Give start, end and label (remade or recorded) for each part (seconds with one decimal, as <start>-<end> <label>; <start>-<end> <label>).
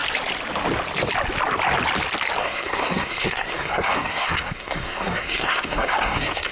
0.0-2.4 recorded; 2.4-6.5 remade